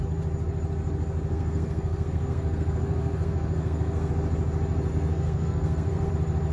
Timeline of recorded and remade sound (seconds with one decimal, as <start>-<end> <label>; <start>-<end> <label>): 0.0-1.3 recorded; 1.3-4.1 remade; 4.1-4.9 recorded; 4.9-6.1 remade; 6.1-6.5 recorded